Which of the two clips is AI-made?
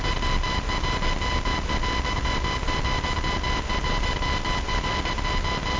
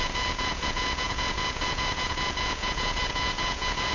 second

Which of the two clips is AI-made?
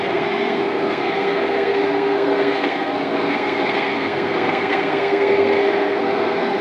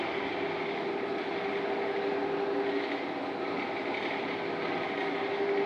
first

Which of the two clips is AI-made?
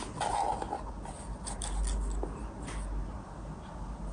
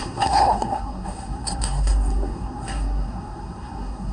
second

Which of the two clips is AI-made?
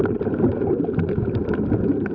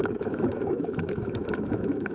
second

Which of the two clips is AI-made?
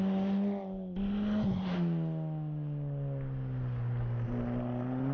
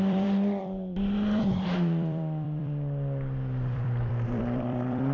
second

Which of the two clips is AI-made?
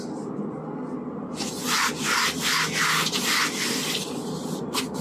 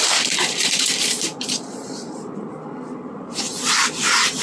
second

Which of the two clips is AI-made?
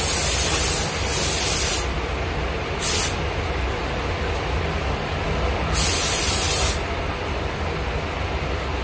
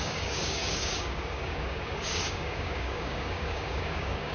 second